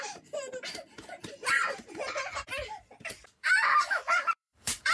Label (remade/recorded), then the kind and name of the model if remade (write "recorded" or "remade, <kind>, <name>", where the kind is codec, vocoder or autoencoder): remade, vocoder, BigVGAN v2